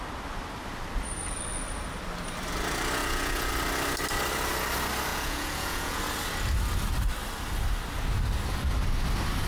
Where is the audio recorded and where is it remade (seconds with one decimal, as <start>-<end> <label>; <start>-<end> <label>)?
0.0-3.0 recorded; 3.0-3.5 remade; 3.5-5.1 recorded; 5.1-6.0 remade; 6.0-9.5 recorded